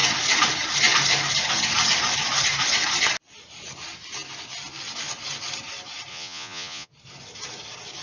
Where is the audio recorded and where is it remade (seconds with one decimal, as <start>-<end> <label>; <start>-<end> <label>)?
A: 0.0-6.1 recorded; 6.1-6.9 remade; 6.9-8.0 recorded